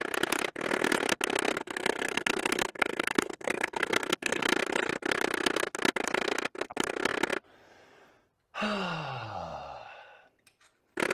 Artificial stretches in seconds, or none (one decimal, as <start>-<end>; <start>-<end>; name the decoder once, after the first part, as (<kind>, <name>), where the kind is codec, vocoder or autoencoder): 1.5-4.5 (codec, SNAC)